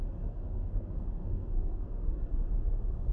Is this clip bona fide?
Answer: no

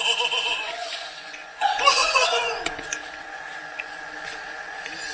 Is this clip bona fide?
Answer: no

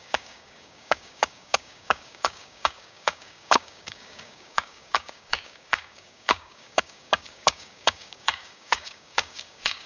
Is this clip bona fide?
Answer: no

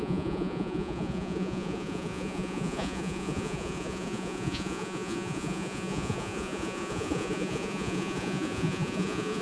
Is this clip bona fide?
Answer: no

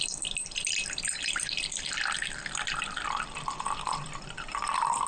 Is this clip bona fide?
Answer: yes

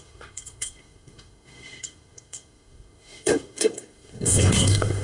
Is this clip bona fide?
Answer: no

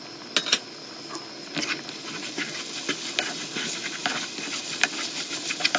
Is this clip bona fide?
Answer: yes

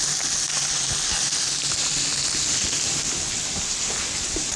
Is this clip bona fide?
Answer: yes